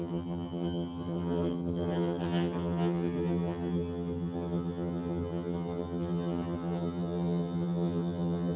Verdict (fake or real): fake